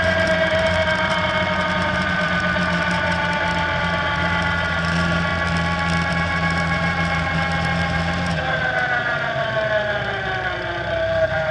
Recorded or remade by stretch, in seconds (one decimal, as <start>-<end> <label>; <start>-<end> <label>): 0.0-5.3 remade; 5.3-6.1 recorded; 6.1-11.5 remade